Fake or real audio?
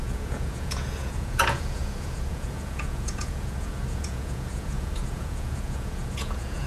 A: fake